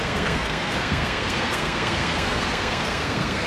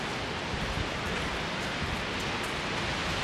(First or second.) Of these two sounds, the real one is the second